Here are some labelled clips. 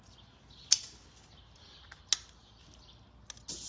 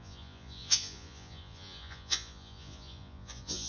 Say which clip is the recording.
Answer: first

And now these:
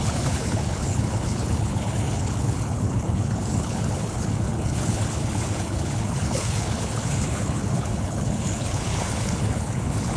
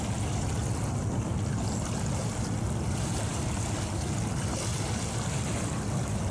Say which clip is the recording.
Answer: second